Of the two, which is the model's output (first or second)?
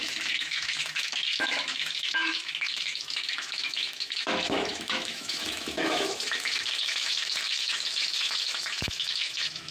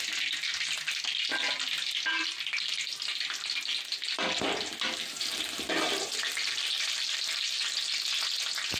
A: first